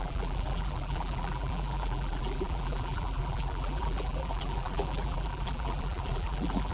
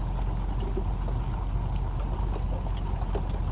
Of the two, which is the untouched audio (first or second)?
second